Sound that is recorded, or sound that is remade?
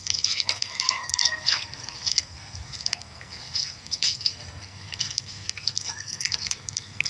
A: remade